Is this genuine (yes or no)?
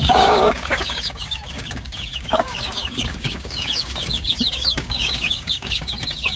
no